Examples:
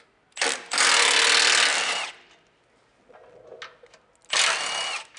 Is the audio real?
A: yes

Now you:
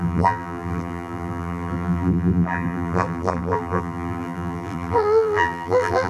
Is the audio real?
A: no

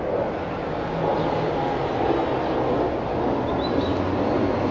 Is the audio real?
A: yes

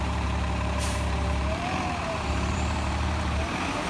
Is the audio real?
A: no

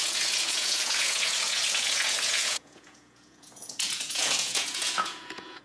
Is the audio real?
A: no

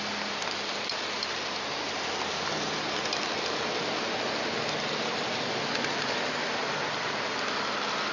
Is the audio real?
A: yes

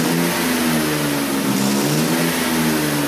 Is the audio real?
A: yes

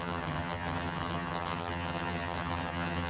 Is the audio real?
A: no